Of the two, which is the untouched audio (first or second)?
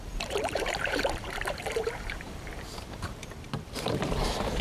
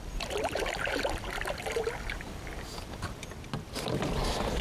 second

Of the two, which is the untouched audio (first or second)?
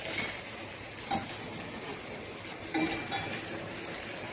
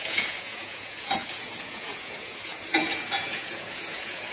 first